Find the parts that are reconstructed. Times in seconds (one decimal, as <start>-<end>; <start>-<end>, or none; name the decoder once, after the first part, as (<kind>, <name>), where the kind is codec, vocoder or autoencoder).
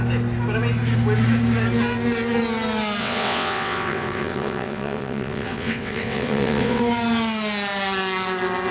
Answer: 3.0-6.8 (vocoder, WaveNeXt)